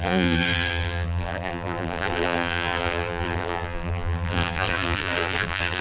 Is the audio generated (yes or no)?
yes